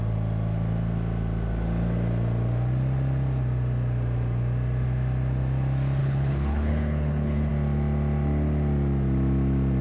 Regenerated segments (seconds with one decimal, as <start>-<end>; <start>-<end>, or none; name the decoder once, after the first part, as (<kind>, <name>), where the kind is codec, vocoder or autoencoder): 6.0-7.5 (codec, HILCodec)